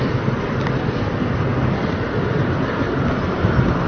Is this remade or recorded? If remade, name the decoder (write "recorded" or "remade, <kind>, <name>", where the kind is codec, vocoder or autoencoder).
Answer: remade, vocoder, BigVGAN v2